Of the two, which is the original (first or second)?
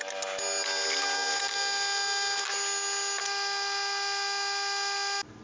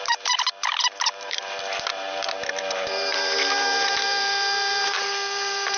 first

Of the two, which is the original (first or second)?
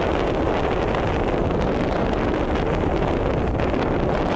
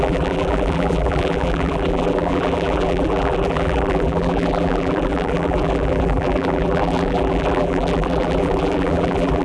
first